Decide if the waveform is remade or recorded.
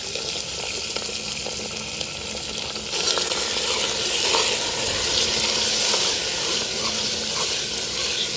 recorded